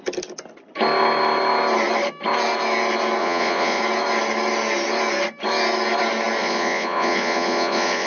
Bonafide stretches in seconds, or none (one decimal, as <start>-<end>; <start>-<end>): 0.0-3.2; 3.8-6.4